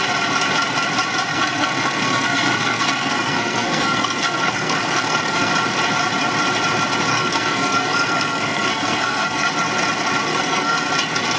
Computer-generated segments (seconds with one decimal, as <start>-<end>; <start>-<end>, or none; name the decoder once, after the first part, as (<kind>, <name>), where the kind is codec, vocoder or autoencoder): 1.3-5.5 (codec, SNAC); 7.1-9.5; 10.3-10.9